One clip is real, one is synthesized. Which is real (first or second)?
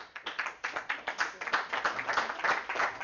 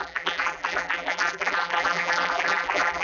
first